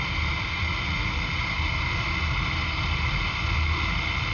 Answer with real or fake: real